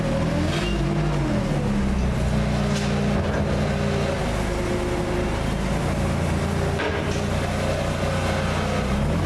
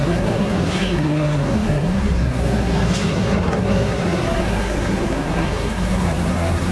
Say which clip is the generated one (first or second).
second